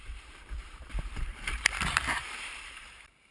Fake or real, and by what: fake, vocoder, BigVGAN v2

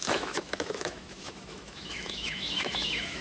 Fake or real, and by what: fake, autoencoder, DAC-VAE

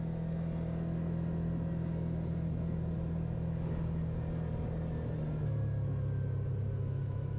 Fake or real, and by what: real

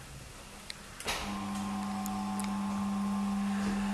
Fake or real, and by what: real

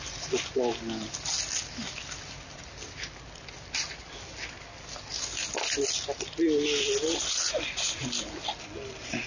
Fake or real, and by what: real